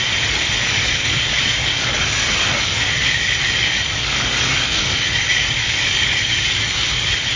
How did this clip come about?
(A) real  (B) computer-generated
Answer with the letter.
B